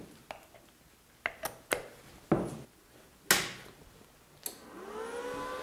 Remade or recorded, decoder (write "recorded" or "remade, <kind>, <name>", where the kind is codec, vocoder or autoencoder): recorded